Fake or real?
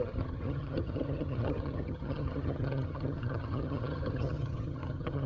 fake